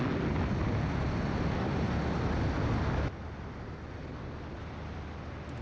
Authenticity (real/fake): real